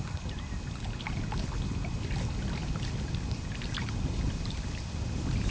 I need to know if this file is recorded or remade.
recorded